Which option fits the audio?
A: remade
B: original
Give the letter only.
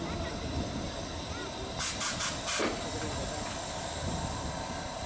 B